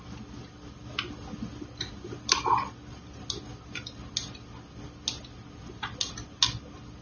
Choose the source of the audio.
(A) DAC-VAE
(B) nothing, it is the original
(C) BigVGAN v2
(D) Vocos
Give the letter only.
B